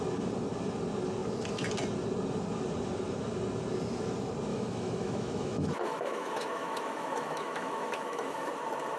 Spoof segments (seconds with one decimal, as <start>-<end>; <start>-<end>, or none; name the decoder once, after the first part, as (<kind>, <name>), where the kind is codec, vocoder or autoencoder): 4.5-8.5 (autoencoder, DAC-VAE)